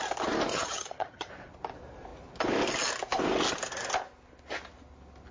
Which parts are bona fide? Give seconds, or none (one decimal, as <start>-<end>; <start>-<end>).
0.0-0.5; 1.3-5.3